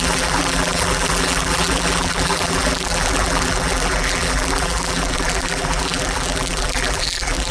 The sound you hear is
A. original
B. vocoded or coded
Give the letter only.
B